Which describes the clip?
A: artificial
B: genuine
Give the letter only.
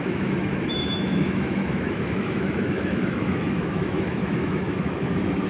A